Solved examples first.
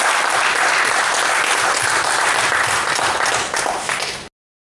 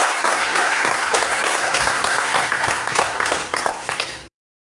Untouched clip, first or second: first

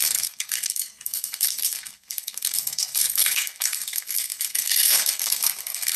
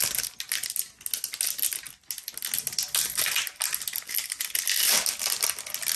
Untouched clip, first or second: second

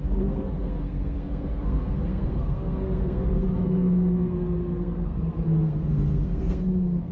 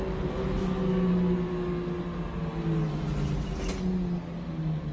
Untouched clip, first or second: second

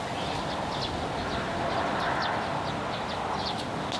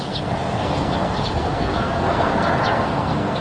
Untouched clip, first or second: first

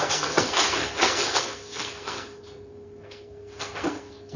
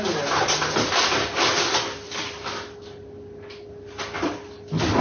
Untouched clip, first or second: second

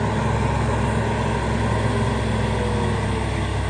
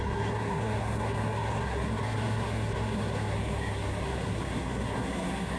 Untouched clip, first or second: first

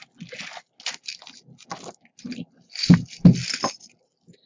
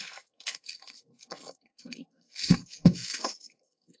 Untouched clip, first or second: first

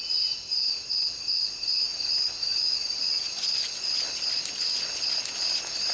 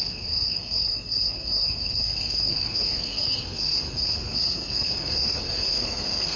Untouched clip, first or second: first